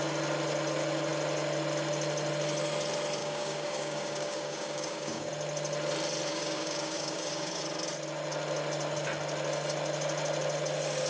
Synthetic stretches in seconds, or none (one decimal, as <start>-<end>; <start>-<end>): 3.2-5.3; 6.3-7.6